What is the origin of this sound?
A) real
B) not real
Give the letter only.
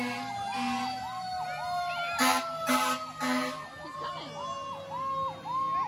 A